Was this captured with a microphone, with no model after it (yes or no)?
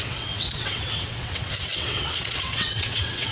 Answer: no